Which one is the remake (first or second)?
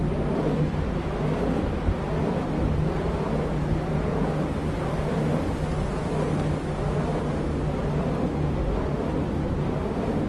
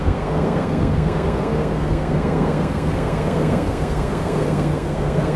second